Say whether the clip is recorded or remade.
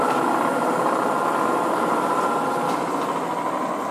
recorded